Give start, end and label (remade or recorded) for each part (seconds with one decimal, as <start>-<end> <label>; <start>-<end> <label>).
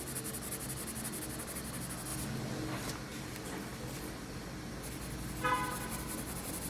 0.0-6.7 recorded